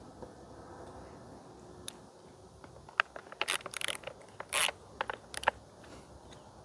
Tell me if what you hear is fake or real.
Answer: real